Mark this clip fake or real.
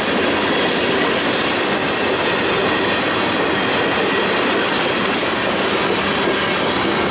real